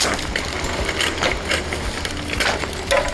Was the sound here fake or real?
real